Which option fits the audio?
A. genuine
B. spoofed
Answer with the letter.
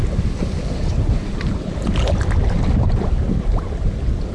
A